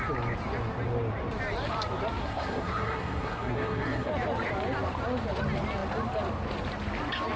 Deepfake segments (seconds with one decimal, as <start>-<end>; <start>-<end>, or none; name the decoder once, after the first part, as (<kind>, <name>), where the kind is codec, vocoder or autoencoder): 2.2-4.1 (codec, SNAC)